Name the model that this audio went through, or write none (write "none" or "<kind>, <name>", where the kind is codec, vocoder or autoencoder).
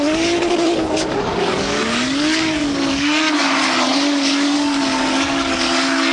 codec, DAC